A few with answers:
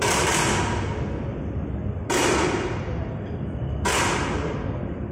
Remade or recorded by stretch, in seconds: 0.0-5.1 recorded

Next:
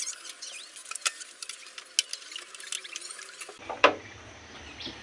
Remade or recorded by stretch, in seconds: 0.0-0.8 recorded; 0.8-1.5 remade; 1.5-2.8 recorded; 2.8-4.0 remade; 4.0-5.0 recorded

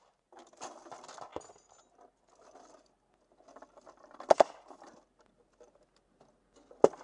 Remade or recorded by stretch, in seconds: 0.0-7.0 recorded

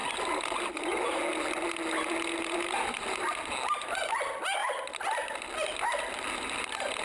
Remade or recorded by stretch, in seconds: 0.0-7.0 recorded

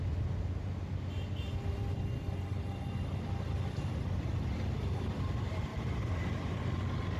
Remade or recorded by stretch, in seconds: 0.0-5.7 recorded; 5.7-6.2 remade; 6.2-7.2 recorded